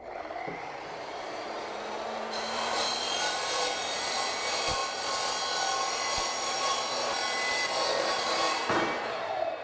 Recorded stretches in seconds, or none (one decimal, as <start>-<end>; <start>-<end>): 4.8-6.1; 6.7-7.9